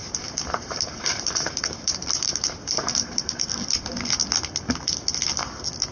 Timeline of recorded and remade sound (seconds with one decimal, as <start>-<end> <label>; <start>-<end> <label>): 0.0-3.5 remade; 3.5-5.9 recorded